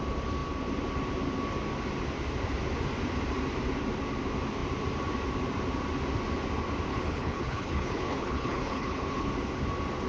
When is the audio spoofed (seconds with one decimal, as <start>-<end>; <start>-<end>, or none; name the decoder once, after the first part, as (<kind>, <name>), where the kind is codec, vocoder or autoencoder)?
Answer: 6.9-9.3 (codec, HILCodec)